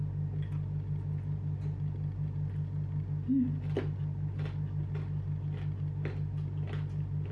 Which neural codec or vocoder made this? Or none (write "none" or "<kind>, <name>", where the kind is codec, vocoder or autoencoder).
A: none